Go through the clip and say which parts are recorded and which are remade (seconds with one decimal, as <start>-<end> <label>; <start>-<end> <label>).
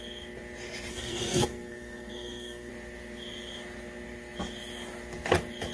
0.0-0.9 recorded; 0.9-2.7 remade; 2.7-5.7 recorded